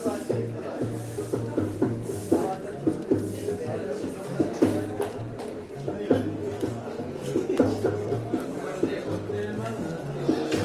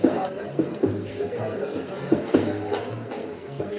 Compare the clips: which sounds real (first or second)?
first